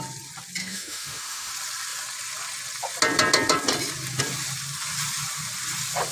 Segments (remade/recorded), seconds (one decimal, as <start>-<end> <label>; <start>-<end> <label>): 0.0-0.6 recorded; 0.6-1.5 remade; 1.5-6.1 recorded

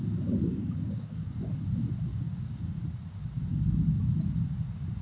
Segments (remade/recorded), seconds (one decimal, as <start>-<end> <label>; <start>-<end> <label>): 0.0-0.5 recorded; 0.5-1.5 remade; 1.5-2.1 recorded; 2.1-2.8 remade; 2.8-5.0 recorded